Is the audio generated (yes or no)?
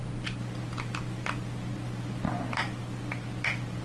no